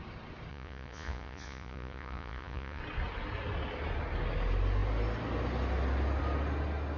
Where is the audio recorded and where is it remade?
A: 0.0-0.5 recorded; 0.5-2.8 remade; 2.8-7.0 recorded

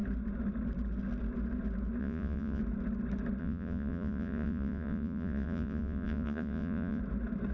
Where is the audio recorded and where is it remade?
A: 0.0-2.0 recorded; 2.0-2.6 remade; 2.6-3.4 recorded; 3.4-7.0 remade; 7.0-7.5 recorded

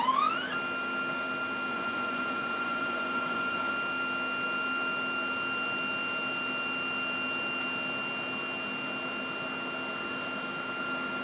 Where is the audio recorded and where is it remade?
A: 0.0-1.7 recorded; 1.7-3.7 remade; 3.7-11.2 recorded

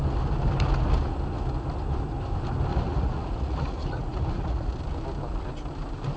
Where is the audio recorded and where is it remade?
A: 0.0-2.7 recorded; 2.7-4.8 remade; 4.8-6.2 recorded